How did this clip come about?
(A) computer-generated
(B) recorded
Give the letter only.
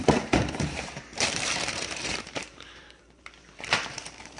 A